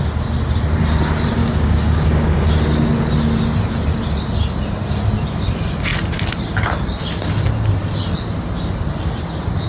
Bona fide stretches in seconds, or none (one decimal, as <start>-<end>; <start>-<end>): 0.0-1.4; 2.5-9.7